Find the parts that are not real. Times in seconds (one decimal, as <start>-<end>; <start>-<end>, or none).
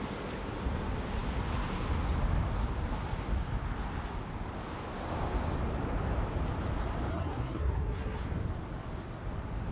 7.1-8.2